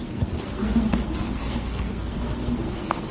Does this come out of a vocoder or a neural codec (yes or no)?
yes